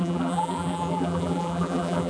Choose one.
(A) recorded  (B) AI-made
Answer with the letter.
B